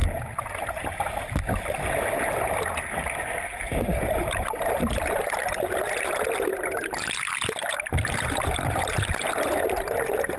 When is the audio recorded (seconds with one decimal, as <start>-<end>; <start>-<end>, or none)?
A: 0.0-10.4